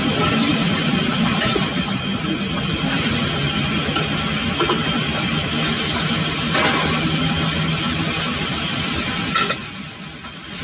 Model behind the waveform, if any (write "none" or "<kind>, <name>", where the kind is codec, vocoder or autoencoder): none